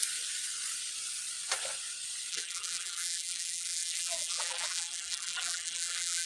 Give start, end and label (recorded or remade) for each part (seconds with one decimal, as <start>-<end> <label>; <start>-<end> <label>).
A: 0.0-2.3 recorded; 2.3-6.3 remade